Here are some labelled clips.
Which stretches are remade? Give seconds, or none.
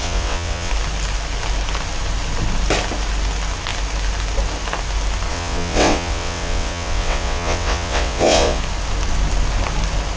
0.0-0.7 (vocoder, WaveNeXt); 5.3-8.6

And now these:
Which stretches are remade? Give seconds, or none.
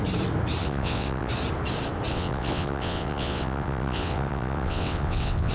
0.6-1.3 (vocoder, WaveNeXt); 2.1-5.5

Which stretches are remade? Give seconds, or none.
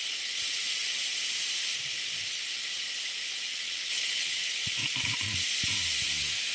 0.0-1.0 (vocoder, WaveNeXt); 3.5-4.8